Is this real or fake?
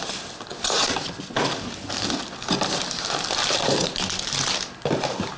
real